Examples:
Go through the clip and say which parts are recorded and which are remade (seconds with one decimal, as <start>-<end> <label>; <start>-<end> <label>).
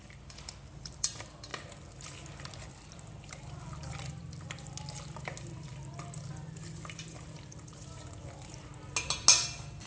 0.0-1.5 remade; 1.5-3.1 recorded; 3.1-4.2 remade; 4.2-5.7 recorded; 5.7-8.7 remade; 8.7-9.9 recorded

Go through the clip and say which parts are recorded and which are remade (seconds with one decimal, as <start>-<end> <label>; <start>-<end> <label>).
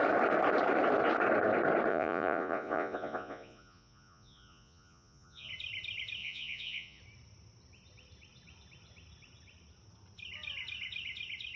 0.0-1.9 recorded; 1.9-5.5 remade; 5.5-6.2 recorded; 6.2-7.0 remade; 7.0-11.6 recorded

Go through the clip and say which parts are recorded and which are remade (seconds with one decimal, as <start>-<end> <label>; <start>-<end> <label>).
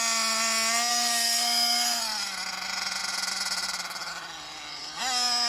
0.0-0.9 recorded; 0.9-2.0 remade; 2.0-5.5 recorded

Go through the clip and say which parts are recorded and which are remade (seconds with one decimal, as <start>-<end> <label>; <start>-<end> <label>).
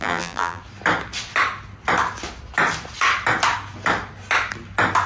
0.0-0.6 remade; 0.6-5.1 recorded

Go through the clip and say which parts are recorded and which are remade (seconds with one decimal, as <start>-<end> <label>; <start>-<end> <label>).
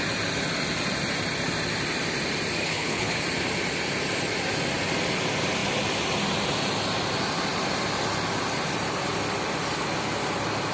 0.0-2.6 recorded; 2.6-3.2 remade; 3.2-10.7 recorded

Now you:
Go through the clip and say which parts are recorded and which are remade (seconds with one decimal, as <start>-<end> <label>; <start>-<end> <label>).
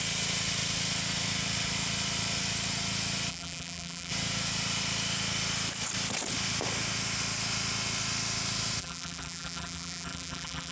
0.0-3.3 recorded; 3.3-4.1 remade; 4.1-8.8 recorded; 8.8-10.7 remade